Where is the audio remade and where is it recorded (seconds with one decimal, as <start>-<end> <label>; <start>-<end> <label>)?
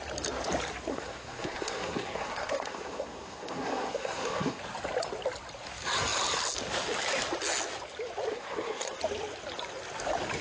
0.0-0.9 recorded; 0.9-4.6 remade; 4.6-8.3 recorded; 8.3-9.0 remade; 9.0-10.4 recorded